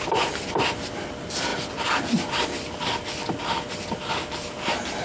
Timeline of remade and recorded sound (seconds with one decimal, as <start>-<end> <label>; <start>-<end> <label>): 0.0-5.0 recorded

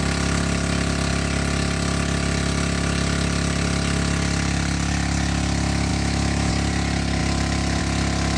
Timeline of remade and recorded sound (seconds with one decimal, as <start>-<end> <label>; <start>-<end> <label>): 0.0-5.9 recorded; 5.9-6.5 remade; 6.5-8.4 recorded

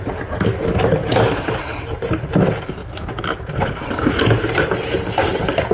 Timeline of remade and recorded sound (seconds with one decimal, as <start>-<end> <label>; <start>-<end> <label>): 0.0-1.0 recorded; 1.0-1.6 remade; 1.6-2.8 recorded; 2.8-4.2 remade; 4.2-5.7 recorded

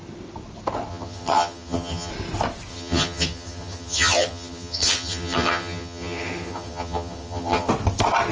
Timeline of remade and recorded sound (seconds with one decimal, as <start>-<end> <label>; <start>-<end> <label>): 0.0-0.9 recorded; 0.9-2.1 remade; 2.1-2.7 recorded; 2.7-7.7 remade; 7.7-8.3 recorded

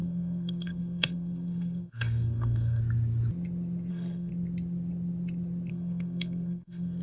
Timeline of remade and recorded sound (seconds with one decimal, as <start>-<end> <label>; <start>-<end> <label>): 0.0-2.8 remade; 2.8-3.9 recorded; 3.9-4.3 remade; 4.3-5.7 recorded; 5.7-7.0 remade

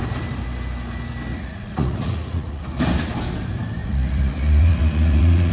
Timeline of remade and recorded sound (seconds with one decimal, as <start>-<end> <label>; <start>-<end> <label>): 0.0-1.3 recorded; 1.3-2.6 remade; 2.6-3.8 recorded; 3.8-5.5 remade